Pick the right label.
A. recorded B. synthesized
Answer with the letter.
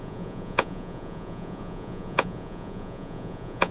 B